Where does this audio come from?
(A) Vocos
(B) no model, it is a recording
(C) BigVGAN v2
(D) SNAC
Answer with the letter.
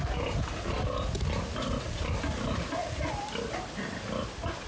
B